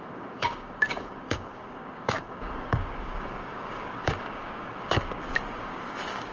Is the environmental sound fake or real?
fake